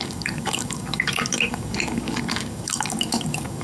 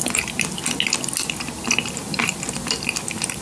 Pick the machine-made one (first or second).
first